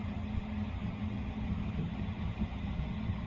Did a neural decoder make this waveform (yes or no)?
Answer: yes